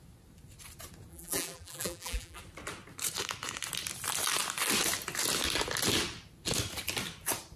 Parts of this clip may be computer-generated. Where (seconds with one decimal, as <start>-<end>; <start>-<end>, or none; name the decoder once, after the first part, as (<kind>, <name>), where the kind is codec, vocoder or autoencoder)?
1.1-2.4 (vocoder, BigVGAN v2)